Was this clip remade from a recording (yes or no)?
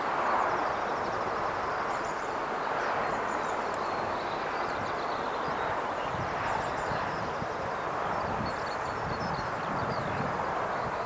no